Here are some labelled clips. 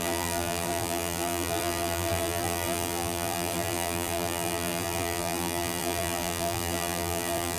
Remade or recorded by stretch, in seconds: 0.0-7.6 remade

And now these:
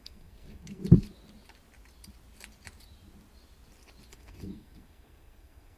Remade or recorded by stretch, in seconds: 0.0-0.8 remade; 0.8-4.1 recorded; 4.1-5.8 remade